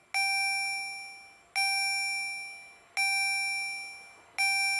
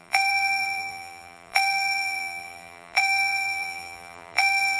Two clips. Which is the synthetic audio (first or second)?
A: second